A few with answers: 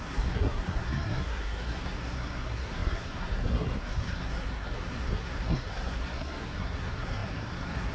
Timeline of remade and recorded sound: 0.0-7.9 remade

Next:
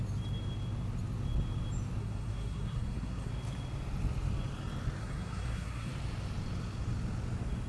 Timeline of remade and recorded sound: 0.0-2.0 recorded; 2.0-3.3 remade; 3.3-5.0 recorded; 5.0-5.9 remade; 5.9-7.7 recorded